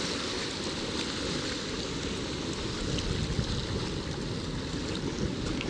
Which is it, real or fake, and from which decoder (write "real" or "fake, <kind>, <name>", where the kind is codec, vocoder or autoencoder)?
real